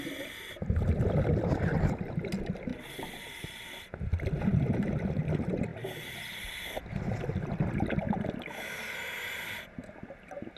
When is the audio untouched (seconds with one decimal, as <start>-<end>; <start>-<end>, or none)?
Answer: 0.0-10.6